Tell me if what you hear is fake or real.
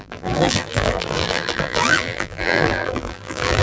fake